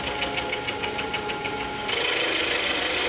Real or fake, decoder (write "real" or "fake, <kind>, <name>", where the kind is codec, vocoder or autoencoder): real